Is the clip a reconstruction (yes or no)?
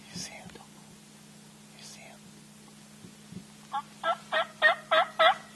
no